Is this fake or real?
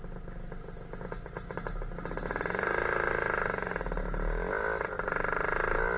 real